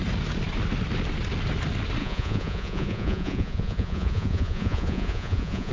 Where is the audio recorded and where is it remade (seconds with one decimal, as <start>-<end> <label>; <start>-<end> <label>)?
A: 0.0-2.0 recorded; 2.0-5.7 remade